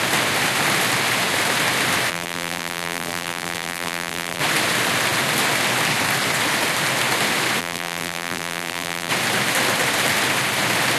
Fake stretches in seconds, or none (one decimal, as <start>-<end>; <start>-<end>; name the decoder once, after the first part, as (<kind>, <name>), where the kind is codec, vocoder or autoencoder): 2.1-4.4 (vocoder, BigVGAN v2); 7.6-9.1